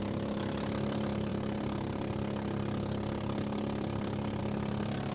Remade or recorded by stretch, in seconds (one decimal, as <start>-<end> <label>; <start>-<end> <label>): 0.0-5.1 recorded